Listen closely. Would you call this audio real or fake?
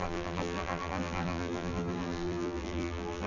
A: fake